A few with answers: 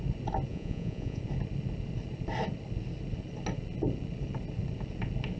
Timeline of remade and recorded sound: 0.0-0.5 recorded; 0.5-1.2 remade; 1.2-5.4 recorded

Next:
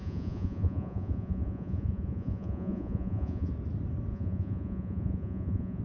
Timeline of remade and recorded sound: 0.0-3.5 remade; 3.5-4.1 recorded; 4.1-5.8 remade

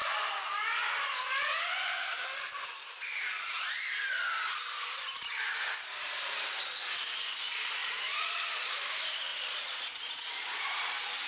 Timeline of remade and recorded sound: 0.0-7.8 recorded; 7.8-8.8 remade; 8.8-9.3 recorded; 9.3-10.6 remade; 10.6-11.3 recorded

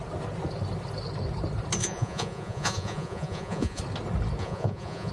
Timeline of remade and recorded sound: 0.0-1.8 recorded; 1.8-3.8 remade; 3.8-4.4 recorded; 4.4-5.1 remade

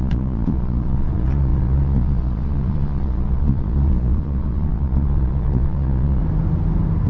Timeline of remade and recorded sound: 0.0-6.2 remade; 6.2-7.1 recorded

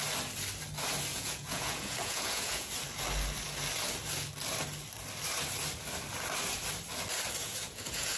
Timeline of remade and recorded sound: 0.0-1.1 recorded; 1.1-2.7 remade; 2.7-7.4 recorded; 7.4-8.2 remade

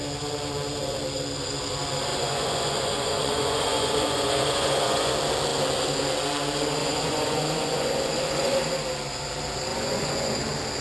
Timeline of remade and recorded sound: 0.0-2.1 recorded; 2.1-5.1 remade; 5.1-6.8 recorded; 6.8-8.6 remade; 8.6-9.7 recorded; 9.7-10.4 remade; 10.4-10.8 recorded